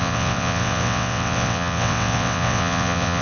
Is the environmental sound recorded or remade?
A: remade